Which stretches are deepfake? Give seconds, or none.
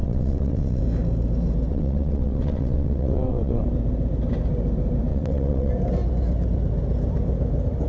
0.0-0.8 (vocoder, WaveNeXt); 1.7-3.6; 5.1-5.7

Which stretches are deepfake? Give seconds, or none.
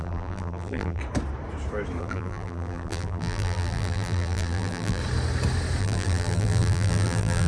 0.0-1.0 (vocoder, BigVGAN v2); 2.0-5.0; 5.8-7.5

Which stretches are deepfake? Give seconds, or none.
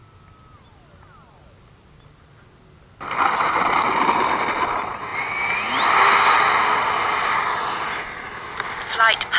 none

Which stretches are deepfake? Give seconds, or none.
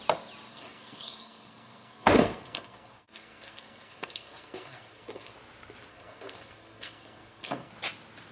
0.5-5.3 (codec, SNAC); 5.9-7.7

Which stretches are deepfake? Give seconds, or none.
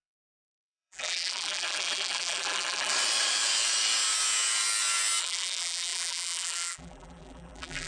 0.0-2.9 (vocoder, BigVGAN v2); 5.2-7.9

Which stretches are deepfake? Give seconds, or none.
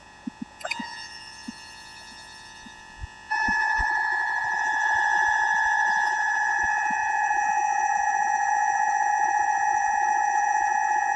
0.0-11.2 (vocoder, Vocos)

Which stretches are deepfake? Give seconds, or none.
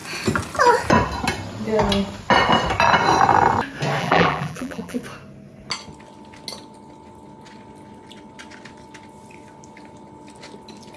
4.0-5.0 (vocoder, BigVGAN v2)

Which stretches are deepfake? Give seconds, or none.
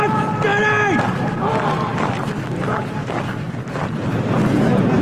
none